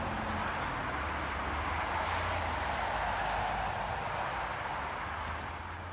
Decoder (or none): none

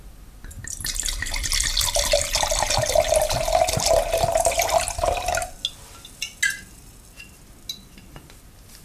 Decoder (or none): none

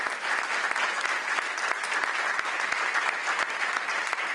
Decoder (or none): none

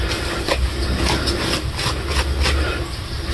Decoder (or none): none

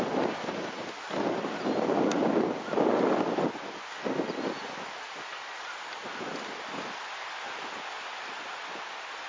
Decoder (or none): none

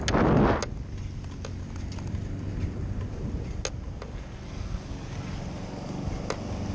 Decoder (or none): none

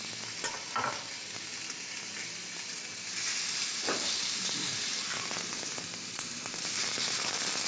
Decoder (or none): none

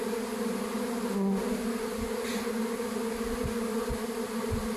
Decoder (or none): none